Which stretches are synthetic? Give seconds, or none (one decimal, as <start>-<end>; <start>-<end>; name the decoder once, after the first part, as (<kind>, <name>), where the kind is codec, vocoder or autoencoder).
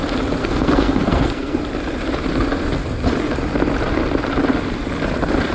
0.4-1.6 (codec, SNAC)